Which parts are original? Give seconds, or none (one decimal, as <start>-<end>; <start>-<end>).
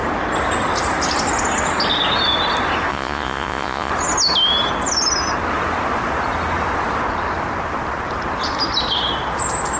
0.0-2.9; 3.9-9.8